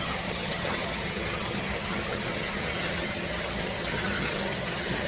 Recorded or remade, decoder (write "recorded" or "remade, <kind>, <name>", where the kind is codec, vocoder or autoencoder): remade, vocoder, HiFi-GAN